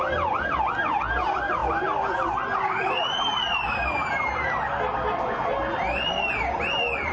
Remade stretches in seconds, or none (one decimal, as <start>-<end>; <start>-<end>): none